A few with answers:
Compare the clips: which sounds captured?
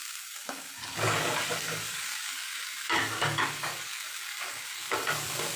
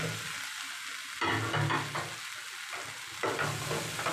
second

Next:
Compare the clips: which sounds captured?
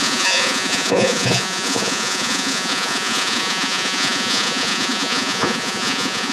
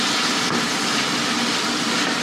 second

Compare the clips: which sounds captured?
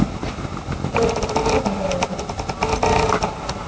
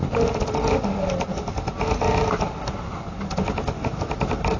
first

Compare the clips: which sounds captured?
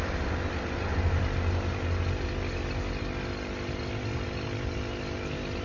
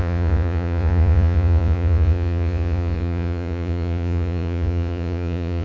first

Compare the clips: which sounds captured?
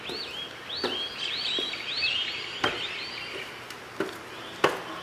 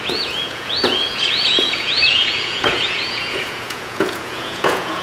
first